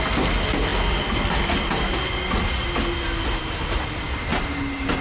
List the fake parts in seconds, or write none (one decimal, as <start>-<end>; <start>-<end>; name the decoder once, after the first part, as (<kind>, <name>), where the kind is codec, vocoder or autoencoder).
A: none